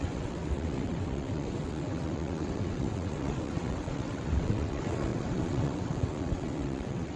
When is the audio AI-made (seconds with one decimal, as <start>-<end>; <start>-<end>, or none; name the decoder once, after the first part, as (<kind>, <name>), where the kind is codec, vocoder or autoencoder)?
0.0-7.2 (vocoder, WaveNeXt)